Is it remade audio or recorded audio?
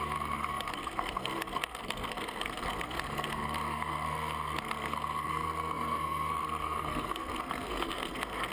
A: remade